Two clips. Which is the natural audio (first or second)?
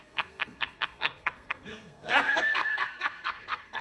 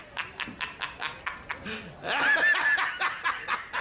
second